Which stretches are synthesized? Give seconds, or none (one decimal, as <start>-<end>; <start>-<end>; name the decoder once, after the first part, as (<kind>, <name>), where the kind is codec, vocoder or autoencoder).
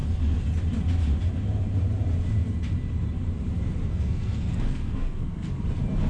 3.9-5.6 (codec, SNAC)